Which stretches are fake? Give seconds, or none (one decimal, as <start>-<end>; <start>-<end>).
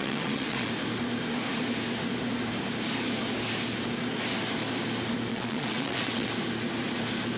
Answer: 0.0-0.7; 5.3-6.3